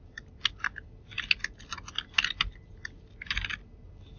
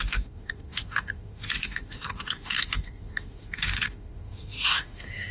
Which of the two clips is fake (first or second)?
second